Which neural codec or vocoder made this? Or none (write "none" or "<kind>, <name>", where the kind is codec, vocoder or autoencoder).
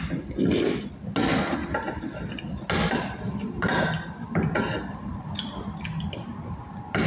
none